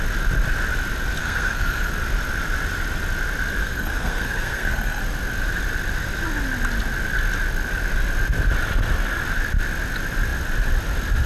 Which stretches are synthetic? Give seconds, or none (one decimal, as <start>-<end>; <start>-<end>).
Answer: 1.2-1.9; 3.6-5.0